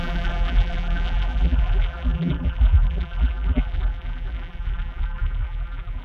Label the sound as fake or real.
fake